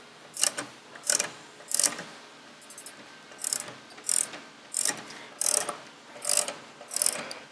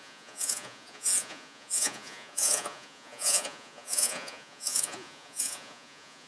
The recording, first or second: first